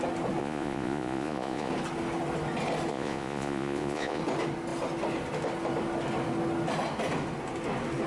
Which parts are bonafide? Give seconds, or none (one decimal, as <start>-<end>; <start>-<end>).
0.0-0.4; 1.7-2.9; 4.2-8.1